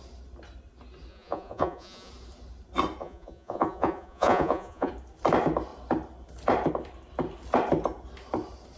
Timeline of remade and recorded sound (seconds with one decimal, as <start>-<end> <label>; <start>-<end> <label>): 0.0-1.1 recorded; 1.1-2.1 remade; 2.1-3.0 recorded; 3.0-4.9 remade; 4.9-8.8 recorded